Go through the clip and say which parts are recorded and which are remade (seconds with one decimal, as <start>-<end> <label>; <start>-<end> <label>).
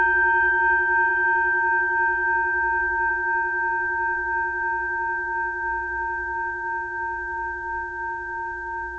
0.0-9.0 recorded